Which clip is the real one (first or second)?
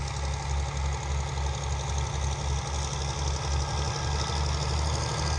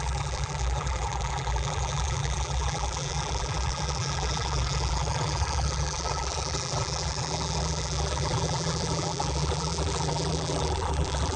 first